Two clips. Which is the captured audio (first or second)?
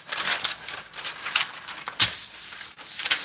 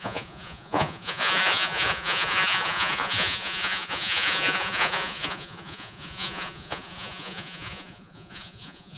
first